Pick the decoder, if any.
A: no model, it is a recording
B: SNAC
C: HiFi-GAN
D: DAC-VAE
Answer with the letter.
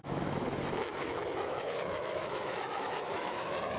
D